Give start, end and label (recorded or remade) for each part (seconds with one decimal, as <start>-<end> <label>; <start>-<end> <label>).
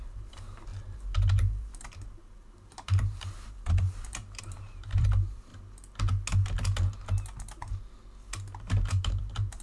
0.0-5.5 remade; 5.5-8.9 recorded; 8.9-9.6 remade